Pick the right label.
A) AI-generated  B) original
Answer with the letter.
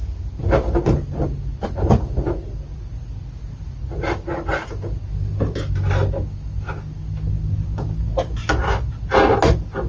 B